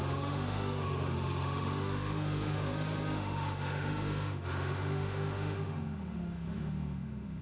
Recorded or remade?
remade